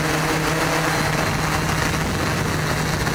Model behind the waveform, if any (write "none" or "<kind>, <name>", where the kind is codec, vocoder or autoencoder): none